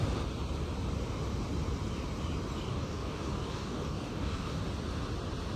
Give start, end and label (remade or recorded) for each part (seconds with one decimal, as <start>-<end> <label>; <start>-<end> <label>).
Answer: 0.0-2.7 recorded; 2.7-4.6 remade; 4.6-5.6 recorded